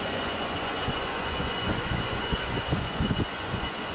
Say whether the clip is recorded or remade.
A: remade